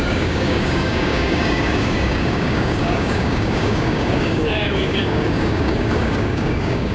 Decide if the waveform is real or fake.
fake